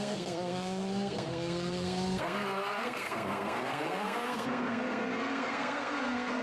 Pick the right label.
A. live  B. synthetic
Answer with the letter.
B